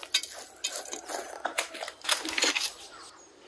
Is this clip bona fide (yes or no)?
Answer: yes